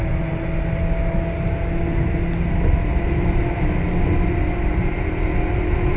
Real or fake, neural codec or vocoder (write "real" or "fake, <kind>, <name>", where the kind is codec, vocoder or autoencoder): real